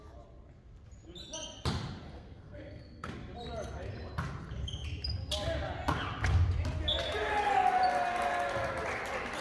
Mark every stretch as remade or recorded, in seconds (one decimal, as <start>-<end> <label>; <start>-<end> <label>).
0.0-2.1 recorded; 2.1-3.1 remade; 3.1-9.4 recorded